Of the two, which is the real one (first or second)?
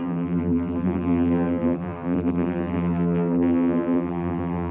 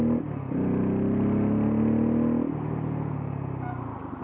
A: second